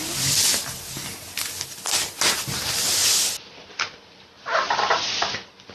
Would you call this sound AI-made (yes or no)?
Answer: no